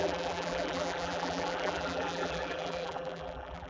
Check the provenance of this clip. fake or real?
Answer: fake